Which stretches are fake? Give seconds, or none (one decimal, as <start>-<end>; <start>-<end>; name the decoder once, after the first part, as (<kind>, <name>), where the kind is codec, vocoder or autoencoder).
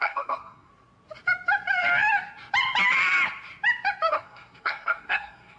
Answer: 0.0-0.7 (codec, SNAC); 4.1-5.6